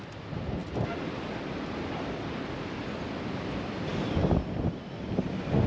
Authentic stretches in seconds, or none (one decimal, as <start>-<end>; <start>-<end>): 0.0-5.7